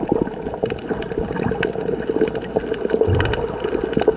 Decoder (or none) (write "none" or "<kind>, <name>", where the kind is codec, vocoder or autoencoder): none